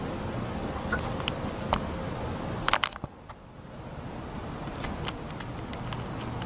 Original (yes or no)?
yes